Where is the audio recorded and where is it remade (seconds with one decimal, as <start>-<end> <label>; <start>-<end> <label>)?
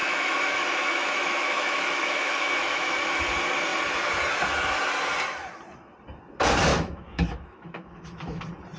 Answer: 0.0-3.2 remade; 3.2-6.7 recorded; 6.7-8.4 remade; 8.4-8.8 recorded